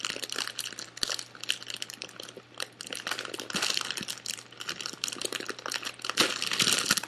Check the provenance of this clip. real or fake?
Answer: real